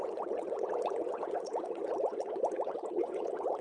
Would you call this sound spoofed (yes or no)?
yes